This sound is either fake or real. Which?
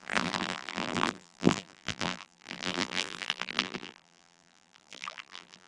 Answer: fake